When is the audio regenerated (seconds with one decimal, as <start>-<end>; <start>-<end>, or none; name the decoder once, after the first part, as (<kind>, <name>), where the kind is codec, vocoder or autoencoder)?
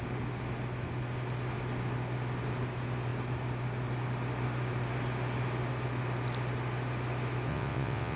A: 7.5-8.2 (vocoder, WaveNeXt)